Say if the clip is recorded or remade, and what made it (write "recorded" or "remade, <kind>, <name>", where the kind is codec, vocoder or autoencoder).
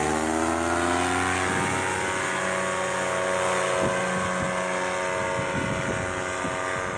recorded